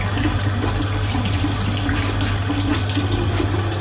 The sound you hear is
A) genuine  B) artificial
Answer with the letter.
A